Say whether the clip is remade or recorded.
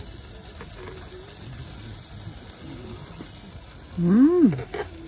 recorded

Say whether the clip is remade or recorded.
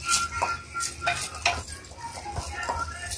recorded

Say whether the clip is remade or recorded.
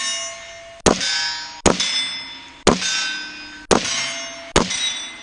recorded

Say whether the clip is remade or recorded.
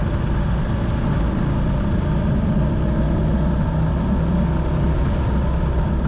recorded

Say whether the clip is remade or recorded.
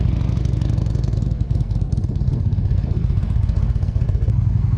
remade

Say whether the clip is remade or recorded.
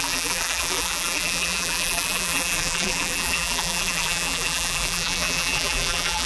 remade